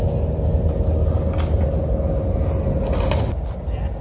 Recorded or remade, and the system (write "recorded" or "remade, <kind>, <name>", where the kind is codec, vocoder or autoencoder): recorded